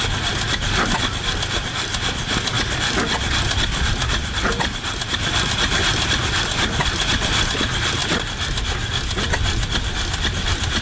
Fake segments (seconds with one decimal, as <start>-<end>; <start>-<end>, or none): none